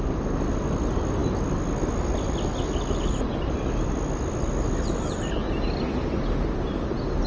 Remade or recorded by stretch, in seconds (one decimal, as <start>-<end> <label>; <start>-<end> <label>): 0.0-7.3 recorded